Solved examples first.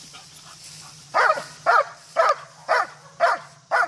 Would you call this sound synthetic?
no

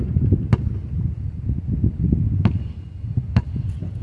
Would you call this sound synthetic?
no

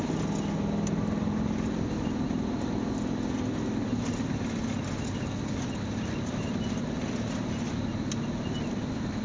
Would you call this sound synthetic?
no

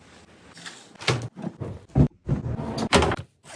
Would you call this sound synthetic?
no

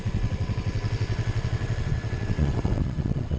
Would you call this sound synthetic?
yes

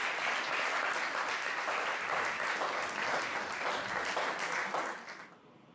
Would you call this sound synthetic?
no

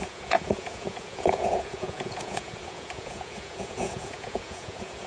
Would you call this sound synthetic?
yes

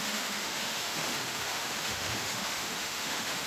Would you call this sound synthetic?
yes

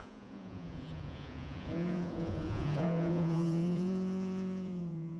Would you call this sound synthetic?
yes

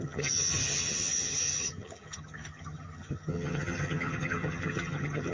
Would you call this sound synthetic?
yes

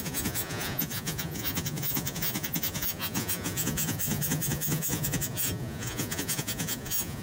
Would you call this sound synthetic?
yes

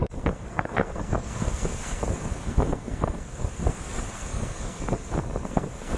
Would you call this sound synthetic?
yes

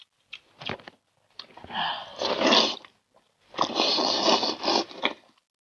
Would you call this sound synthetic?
no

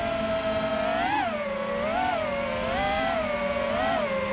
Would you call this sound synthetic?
no